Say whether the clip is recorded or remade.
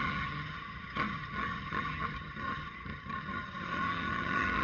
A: remade